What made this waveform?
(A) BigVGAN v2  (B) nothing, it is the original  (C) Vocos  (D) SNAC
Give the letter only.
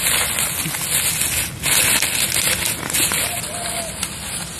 B